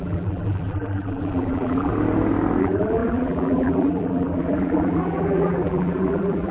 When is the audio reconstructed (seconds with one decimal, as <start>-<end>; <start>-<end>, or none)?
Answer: 0.0-1.9; 2.6-6.5